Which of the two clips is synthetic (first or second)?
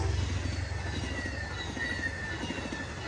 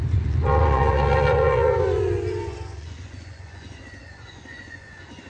second